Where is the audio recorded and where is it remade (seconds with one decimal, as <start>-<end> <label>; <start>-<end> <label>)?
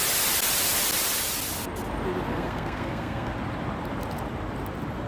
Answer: 0.0-2.3 recorded; 2.3-3.3 remade; 3.3-5.1 recorded